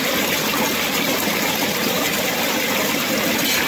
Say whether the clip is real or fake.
real